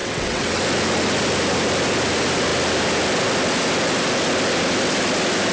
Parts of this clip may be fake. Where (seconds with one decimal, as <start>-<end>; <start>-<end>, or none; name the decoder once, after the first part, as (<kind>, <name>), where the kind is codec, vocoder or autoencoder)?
0.0-0.6 (vocoder, WaveNeXt)